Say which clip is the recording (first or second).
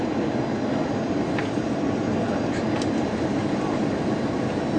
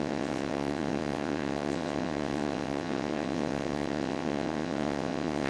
first